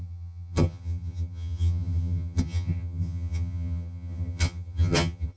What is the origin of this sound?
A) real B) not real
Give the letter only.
B